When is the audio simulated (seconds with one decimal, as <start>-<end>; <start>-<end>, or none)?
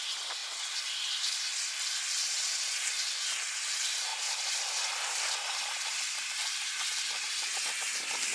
4.1-7.0